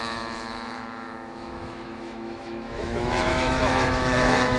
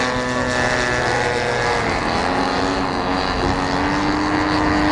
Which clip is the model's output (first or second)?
first